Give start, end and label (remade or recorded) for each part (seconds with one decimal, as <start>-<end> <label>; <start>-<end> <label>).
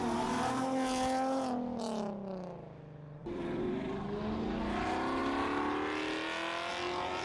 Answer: 0.0-3.2 recorded; 3.2-3.9 remade; 3.9-7.2 recorded